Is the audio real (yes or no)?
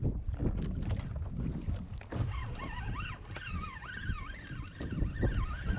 yes